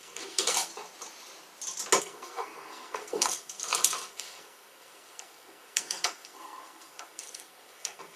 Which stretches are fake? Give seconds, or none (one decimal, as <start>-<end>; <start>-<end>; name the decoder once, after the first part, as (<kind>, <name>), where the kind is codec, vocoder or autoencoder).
0.0-0.7 (codec, SNAC); 2.0-8.2